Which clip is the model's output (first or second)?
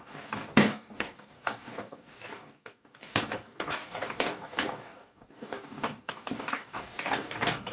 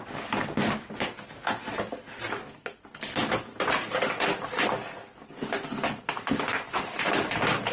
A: first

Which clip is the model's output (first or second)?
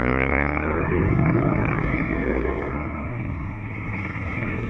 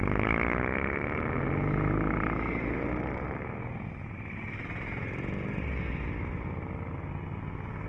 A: first